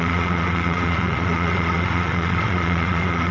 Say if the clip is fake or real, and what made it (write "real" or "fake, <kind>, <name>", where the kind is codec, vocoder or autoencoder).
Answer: fake, vocoder, Vocos